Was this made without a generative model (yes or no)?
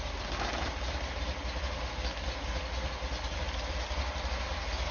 yes